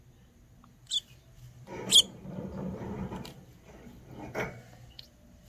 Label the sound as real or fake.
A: real